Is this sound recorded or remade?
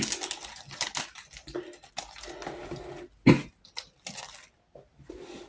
recorded